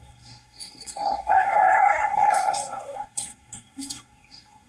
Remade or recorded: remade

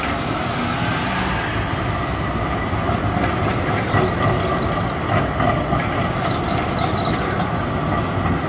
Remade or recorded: recorded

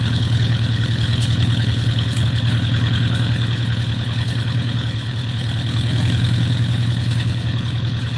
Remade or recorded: remade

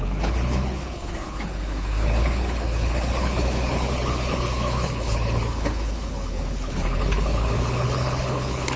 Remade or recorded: remade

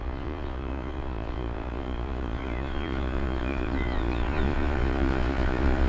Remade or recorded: remade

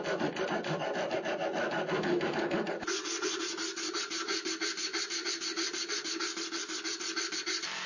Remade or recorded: remade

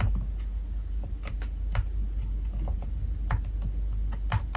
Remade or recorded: recorded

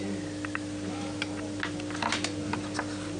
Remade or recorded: recorded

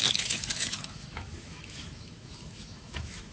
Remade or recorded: remade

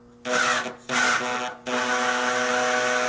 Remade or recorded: recorded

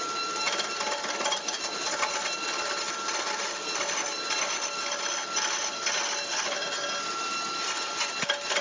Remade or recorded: recorded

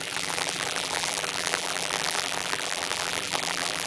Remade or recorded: remade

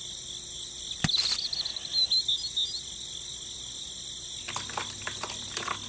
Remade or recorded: recorded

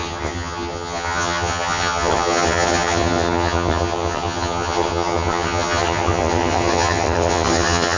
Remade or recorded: remade